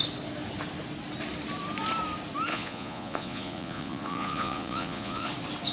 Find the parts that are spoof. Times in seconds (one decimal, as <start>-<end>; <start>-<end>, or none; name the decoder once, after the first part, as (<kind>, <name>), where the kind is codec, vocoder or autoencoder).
2.5-5.3 (vocoder, Vocos)

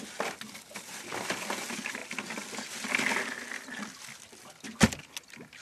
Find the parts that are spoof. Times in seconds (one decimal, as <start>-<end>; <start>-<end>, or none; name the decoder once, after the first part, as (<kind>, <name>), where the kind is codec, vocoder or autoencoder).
none

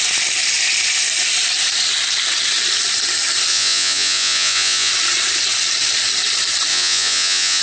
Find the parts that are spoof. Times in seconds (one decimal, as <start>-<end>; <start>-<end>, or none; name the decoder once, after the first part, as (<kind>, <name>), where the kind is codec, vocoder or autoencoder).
3.5-4.9 (vocoder, Vocos); 6.7-7.6